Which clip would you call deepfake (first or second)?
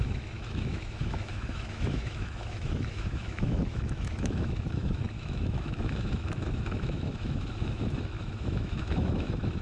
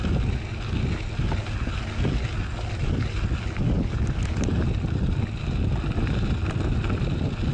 first